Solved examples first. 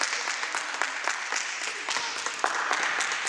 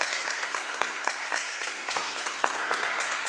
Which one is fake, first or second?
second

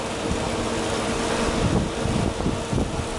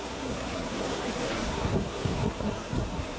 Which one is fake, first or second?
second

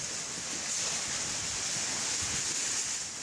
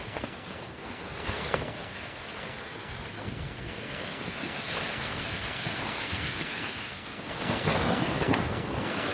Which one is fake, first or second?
second